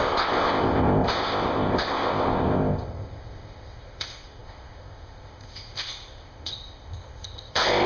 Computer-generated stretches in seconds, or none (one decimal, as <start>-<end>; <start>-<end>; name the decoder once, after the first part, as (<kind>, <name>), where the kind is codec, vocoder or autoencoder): 0.0-7.9 (codec, ZipCodec)